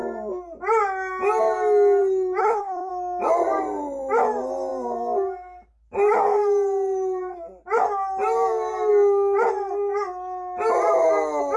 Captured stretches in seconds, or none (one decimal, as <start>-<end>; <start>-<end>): 0.0-2.4; 2.9-11.6